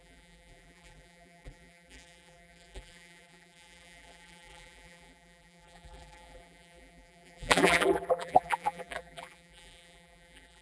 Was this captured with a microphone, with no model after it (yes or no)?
no